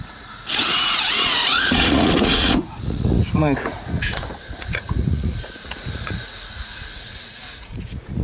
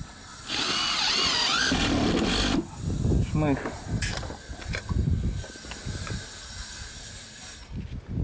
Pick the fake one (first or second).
first